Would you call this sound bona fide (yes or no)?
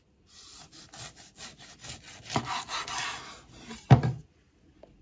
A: yes